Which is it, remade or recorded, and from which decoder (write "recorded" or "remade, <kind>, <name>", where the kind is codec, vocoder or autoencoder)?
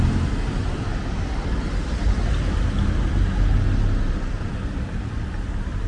recorded